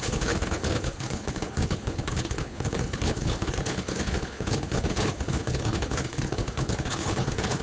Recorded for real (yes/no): no